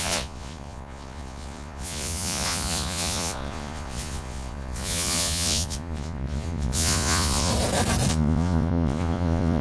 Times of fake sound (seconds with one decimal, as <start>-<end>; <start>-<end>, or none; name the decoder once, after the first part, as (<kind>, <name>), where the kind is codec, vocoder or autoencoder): 0.0-7.5 (vocoder, Vocos); 8.1-9.6